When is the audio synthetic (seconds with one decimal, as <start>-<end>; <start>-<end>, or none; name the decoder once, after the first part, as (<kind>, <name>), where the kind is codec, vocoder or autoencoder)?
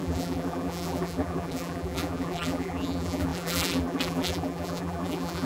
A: 0.0-5.5 (vocoder, BigVGAN v2)